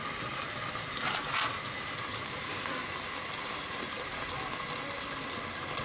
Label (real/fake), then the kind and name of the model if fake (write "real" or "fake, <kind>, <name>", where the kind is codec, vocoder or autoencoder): real